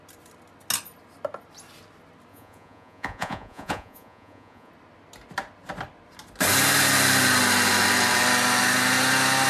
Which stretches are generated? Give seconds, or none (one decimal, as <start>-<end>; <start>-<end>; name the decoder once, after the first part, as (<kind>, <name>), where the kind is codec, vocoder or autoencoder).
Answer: 2.3-4.7 (vocoder, Vocos)